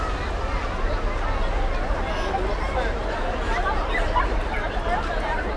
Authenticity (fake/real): real